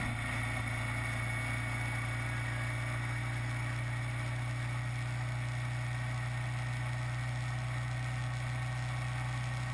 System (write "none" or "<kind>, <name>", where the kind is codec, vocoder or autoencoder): none